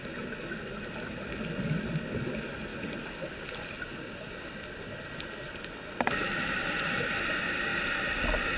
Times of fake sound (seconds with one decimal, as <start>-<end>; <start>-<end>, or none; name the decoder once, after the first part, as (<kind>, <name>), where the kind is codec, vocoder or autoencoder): none